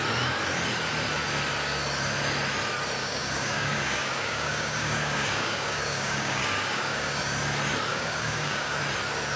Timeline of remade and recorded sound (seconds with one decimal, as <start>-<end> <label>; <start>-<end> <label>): 0.0-3.0 recorded; 3.0-7.2 remade; 7.2-7.9 recorded; 7.9-8.8 remade; 8.8-9.4 recorded